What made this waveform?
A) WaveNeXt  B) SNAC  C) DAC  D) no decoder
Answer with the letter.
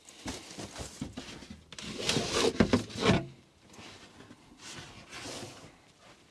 D